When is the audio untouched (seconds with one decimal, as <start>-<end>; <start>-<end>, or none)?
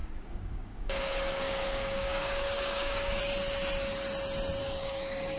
3.2-4.6